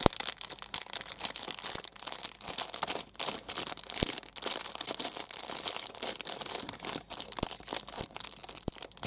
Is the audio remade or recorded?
recorded